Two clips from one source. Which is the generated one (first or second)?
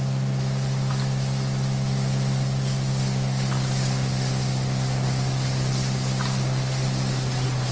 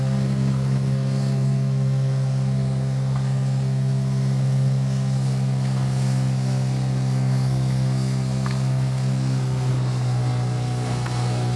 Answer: second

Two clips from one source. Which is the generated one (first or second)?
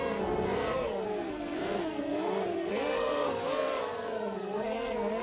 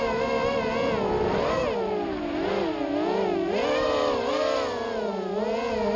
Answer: first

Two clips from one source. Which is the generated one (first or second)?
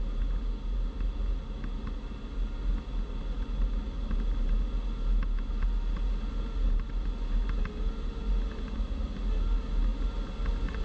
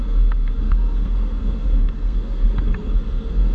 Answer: second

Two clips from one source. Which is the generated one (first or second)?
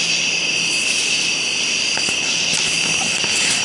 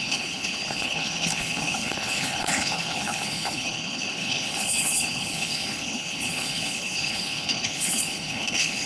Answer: second